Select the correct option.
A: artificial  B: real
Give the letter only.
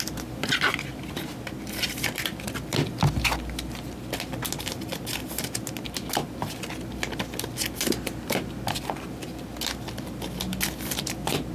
B